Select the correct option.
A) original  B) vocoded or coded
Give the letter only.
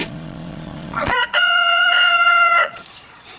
B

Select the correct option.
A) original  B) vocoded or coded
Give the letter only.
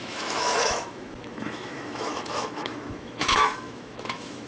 B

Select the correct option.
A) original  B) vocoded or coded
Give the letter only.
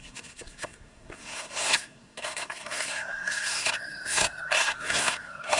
B